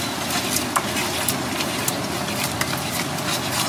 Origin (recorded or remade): recorded